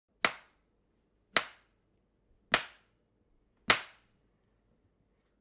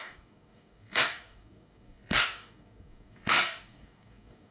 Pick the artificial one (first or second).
second